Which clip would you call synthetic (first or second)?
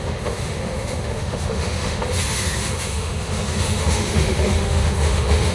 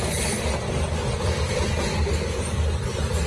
first